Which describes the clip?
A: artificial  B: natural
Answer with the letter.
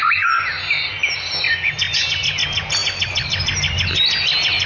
B